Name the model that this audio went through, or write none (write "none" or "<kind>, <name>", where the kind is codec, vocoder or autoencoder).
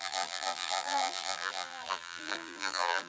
vocoder, BigVGAN v2